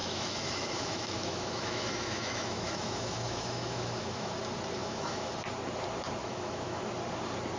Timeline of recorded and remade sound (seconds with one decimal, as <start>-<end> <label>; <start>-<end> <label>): 0.0-4.3 remade; 4.3-4.8 recorded; 4.8-5.3 remade; 5.3-6.2 recorded; 6.2-6.8 remade; 6.8-7.6 recorded